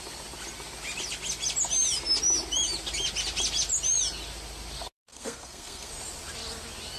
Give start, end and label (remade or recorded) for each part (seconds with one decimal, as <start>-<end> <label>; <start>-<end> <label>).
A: 0.0-5.1 recorded; 5.1-5.9 remade; 5.9-7.0 recorded